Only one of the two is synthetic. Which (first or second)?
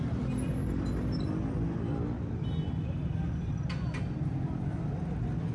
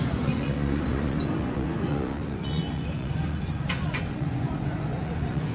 second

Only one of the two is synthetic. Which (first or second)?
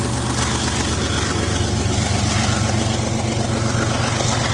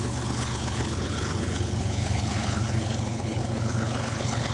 second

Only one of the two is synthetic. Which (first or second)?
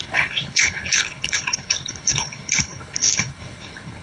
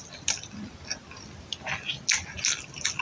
first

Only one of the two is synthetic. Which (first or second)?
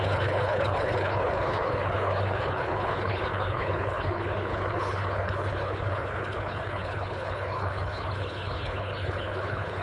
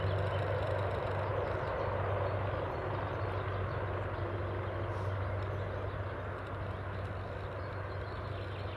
first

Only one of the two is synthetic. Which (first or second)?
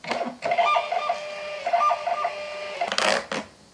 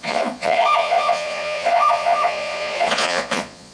second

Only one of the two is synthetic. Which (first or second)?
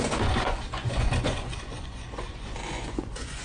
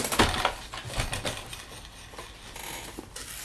first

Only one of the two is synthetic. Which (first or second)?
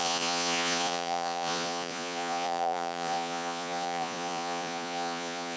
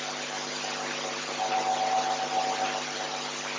first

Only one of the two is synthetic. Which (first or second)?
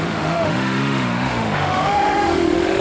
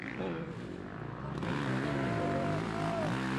first